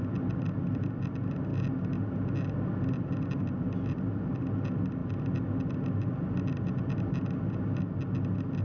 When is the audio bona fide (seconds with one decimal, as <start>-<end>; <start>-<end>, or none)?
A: 0.0-8.6